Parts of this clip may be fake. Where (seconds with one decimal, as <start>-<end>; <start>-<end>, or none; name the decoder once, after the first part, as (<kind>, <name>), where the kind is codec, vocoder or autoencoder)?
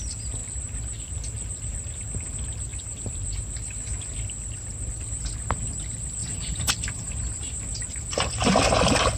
6.2-6.7 (vocoder, Vocos)